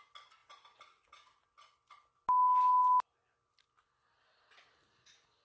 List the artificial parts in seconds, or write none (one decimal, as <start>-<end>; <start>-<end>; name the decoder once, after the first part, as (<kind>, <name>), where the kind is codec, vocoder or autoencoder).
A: none